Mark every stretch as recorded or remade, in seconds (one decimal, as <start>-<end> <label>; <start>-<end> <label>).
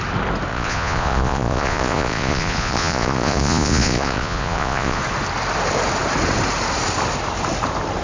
0.0-0.5 recorded; 0.5-5.0 remade; 5.0-8.0 recorded